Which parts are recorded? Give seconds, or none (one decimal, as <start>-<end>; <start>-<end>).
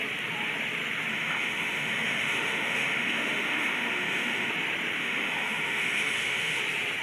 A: 0.0-1.1; 4.5-5.0; 6.6-7.0